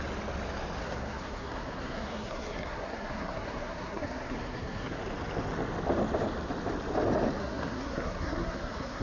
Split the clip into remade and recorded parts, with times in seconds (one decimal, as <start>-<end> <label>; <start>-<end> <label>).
0.0-0.8 recorded; 0.8-5.0 remade; 5.0-7.4 recorded; 7.4-9.0 remade